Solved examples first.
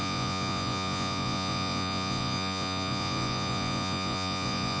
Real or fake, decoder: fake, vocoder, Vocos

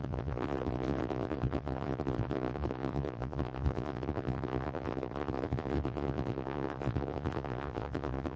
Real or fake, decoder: fake, vocoder, Vocos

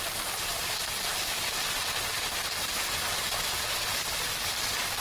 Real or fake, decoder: real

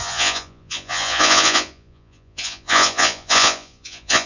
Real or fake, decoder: fake, vocoder, Vocos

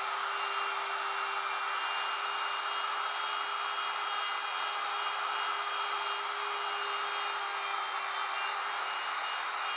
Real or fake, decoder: real